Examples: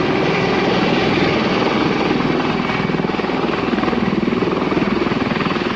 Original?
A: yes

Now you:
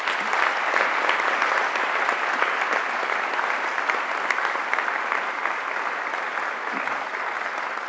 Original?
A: yes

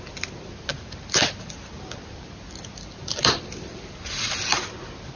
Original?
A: yes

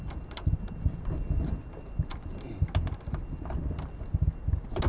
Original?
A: yes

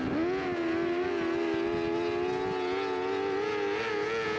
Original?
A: yes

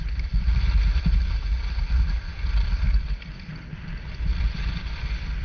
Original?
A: yes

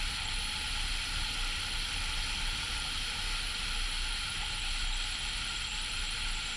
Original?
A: yes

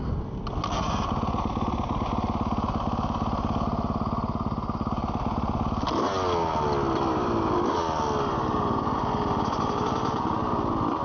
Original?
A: yes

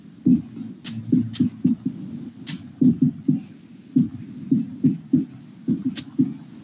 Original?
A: yes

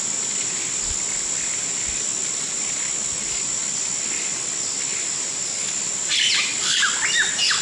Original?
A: yes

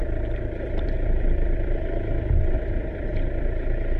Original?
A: no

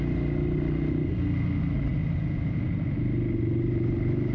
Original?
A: yes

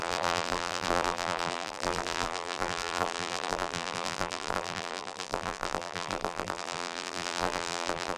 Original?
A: no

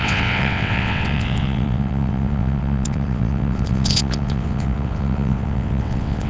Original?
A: no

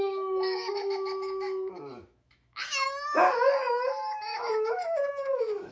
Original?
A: no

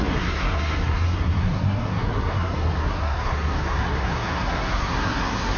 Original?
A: no